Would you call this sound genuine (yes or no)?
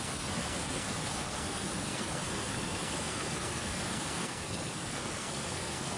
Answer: no